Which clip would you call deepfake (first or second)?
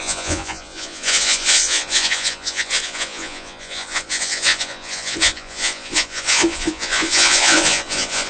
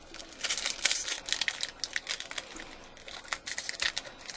first